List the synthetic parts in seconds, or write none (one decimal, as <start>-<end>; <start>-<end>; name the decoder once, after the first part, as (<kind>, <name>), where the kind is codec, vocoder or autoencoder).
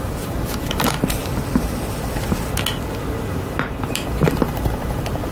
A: 0.0-1.2 (vocoder, BigVGAN v2); 3.3-5.3